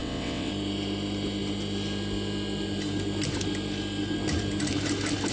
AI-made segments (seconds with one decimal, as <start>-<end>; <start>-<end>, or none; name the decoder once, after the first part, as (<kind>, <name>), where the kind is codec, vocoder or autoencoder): 0.0-0.5 (vocoder, WaveNeXt)